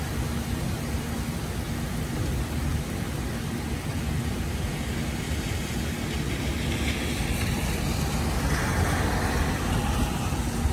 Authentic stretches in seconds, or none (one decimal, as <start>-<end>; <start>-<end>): 0.0-10.7